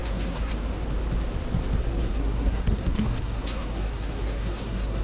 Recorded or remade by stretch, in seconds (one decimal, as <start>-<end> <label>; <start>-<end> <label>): 0.0-0.5 remade; 0.5-1.8 recorded; 1.8-5.0 remade